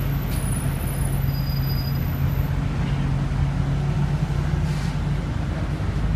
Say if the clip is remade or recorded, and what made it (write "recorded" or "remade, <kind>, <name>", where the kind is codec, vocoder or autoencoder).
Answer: recorded